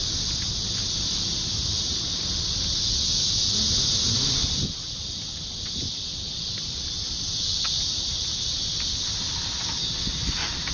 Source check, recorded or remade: recorded